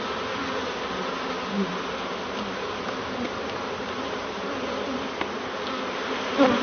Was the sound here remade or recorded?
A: recorded